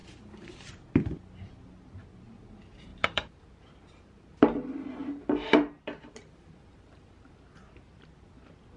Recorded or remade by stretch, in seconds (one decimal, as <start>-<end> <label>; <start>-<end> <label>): 0.0-2.9 recorded; 2.9-3.4 remade; 3.4-5.0 recorded; 5.0-7.3 remade; 7.3-8.8 recorded